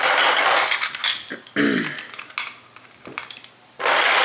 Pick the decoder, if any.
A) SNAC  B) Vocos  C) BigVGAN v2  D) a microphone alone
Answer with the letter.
D